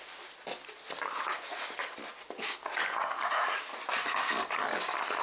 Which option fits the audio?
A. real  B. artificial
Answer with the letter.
A